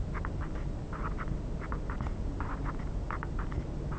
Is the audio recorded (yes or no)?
yes